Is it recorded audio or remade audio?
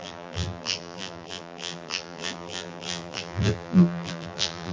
remade